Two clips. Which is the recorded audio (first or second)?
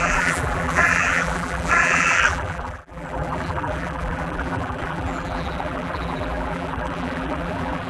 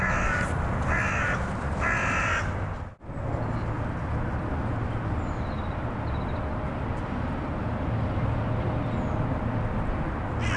second